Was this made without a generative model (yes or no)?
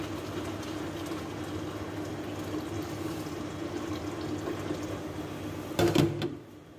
yes